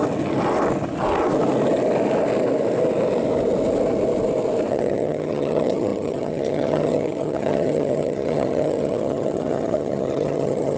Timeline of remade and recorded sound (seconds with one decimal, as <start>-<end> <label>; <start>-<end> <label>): 0.0-4.7 recorded; 4.7-10.8 remade